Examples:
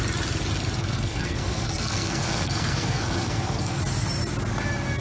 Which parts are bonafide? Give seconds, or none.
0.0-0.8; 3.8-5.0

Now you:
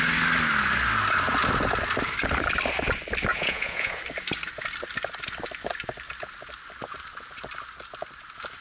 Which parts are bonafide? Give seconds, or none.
0.0-3.3; 4.0-8.6

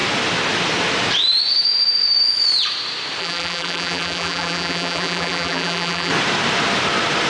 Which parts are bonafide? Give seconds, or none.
0.0-3.2; 6.1-7.3

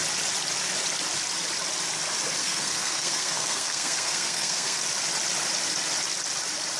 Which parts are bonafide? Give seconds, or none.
0.0-2.4; 4.8-6.8

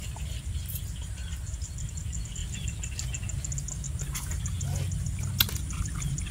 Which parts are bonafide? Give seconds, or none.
0.0-6.3

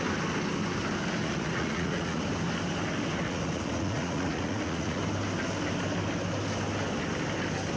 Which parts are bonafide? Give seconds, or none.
0.0-1.2; 2.2-3.2; 5.0-7.8